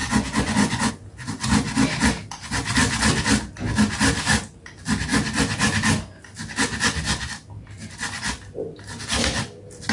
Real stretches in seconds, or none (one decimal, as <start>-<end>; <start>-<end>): 0.9-9.9